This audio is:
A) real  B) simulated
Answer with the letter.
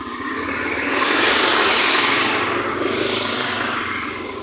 B